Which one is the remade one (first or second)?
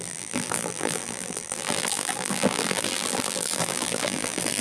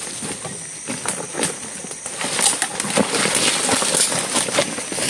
first